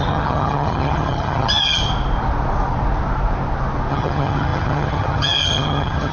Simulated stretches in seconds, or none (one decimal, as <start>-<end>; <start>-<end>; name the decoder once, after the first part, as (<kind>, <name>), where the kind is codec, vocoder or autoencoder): 0.0-1.8 (vocoder, HiFi-GAN); 3.9-6.1